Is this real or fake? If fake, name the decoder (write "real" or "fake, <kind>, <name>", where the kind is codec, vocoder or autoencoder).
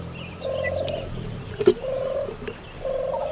real